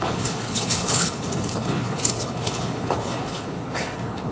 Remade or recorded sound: remade